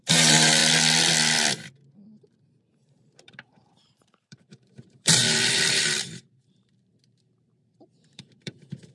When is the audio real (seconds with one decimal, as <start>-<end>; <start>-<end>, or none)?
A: 0.6-2.6